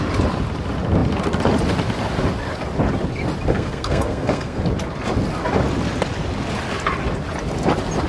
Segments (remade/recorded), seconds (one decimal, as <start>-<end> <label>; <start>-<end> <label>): 0.0-3.5 recorded; 3.5-4.6 remade; 4.6-8.1 recorded